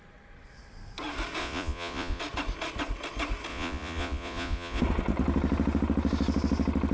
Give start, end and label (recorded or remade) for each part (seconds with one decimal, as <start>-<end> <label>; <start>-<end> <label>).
0.0-1.4 recorded; 1.4-2.2 remade; 2.2-3.5 recorded; 3.5-4.8 remade; 4.8-6.9 recorded